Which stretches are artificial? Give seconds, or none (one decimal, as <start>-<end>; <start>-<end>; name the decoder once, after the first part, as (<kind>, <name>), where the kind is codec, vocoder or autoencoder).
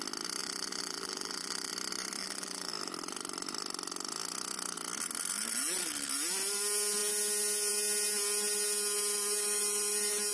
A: 0.4-1.7 (vocoder, BigVGAN v2); 2.2-2.7